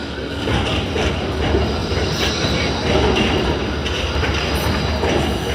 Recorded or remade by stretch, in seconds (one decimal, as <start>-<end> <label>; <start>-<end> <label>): 0.0-0.8 remade; 0.8-5.5 recorded